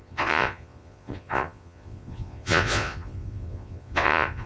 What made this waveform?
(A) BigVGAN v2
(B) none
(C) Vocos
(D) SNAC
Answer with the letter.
C